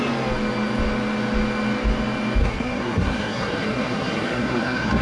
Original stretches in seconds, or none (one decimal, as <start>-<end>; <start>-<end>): 0.0-2.4